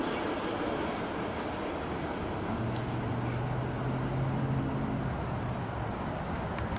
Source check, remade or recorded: recorded